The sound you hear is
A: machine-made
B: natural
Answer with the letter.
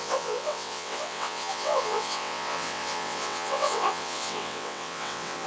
A